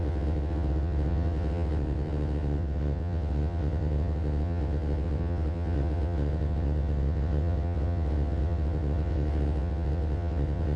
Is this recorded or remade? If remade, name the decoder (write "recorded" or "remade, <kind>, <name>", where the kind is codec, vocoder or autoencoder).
remade, vocoder, WaveNeXt